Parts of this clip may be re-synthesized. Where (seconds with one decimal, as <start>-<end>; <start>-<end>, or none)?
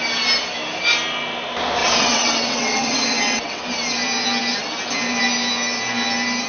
1.8-3.6